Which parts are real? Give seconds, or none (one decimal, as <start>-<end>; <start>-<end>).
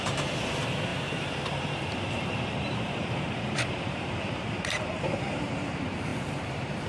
none